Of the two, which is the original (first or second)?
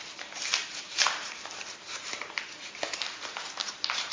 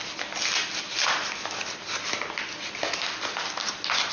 second